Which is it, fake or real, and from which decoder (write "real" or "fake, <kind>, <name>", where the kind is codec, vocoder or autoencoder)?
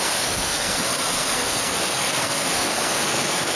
fake, codec, SNAC